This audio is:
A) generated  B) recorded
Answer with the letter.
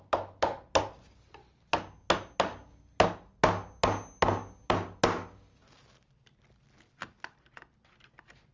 B